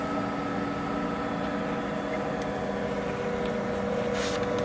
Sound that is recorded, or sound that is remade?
recorded